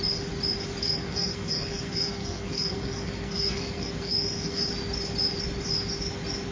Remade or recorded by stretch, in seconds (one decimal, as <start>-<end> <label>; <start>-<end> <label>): 0.0-0.8 recorded; 0.8-4.7 remade; 4.7-6.5 recorded